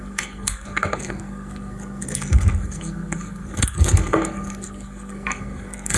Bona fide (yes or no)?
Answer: no